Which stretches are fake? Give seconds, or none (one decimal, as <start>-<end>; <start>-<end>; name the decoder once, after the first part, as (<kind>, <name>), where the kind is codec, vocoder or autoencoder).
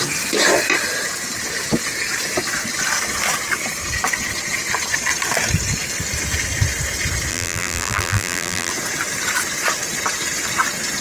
7.3-8.7 (vocoder, BigVGAN v2)